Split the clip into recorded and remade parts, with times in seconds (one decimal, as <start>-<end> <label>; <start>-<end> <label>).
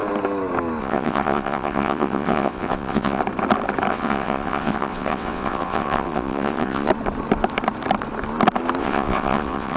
0.0-0.8 recorded; 0.8-3.2 remade; 3.2-3.9 recorded; 3.9-6.9 remade; 6.9-8.8 recorded; 8.8-9.8 remade